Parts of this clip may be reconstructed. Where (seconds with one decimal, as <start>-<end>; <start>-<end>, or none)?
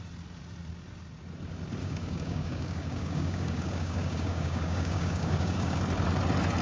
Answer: 1.8-5.8